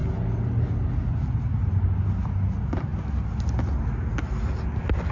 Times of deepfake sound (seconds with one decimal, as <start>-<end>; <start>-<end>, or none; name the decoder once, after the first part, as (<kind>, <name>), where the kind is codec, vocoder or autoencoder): none